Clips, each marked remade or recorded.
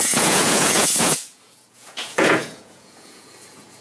remade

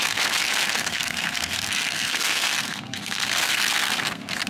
remade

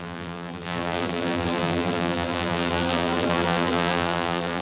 remade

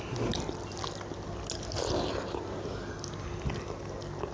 recorded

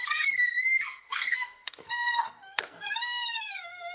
remade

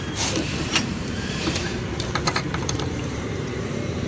remade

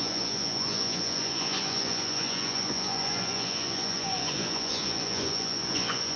remade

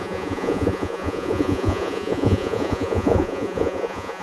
remade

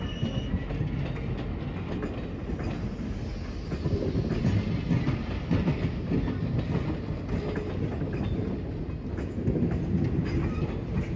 recorded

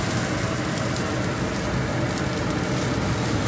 recorded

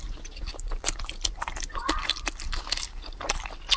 recorded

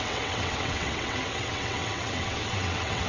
remade